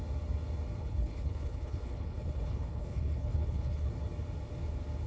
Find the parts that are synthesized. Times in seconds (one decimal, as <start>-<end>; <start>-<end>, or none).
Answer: 0.8-3.9